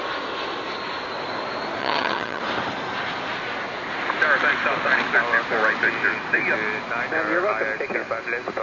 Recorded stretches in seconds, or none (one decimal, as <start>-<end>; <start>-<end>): 0.0-1.8; 2.4-8.6